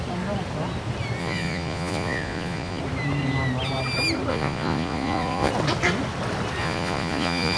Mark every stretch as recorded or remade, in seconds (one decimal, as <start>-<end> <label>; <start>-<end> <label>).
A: 0.0-1.2 recorded; 1.2-2.8 remade; 2.8-4.3 recorded; 4.3-5.5 remade; 5.5-6.6 recorded; 6.6-7.6 remade